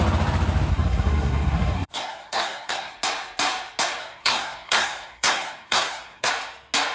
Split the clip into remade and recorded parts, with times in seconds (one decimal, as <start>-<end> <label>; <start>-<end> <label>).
0.0-0.7 recorded; 0.7-2.9 remade; 2.9-4.0 recorded; 4.0-6.3 remade; 6.3-6.9 recorded